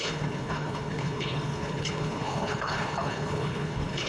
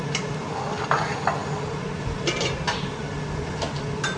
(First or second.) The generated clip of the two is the first